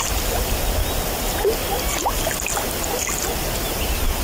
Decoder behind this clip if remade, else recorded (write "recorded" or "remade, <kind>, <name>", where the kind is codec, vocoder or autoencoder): recorded